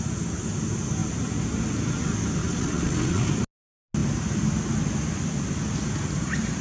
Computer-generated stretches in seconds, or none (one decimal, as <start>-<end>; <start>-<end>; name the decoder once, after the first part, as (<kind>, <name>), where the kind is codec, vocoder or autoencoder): 2.4-3.3 (vocoder, WaveNeXt)